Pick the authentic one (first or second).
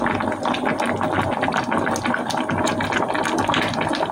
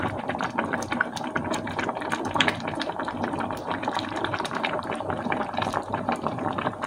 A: first